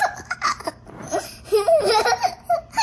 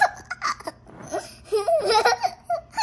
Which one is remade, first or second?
first